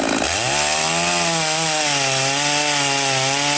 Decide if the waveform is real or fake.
real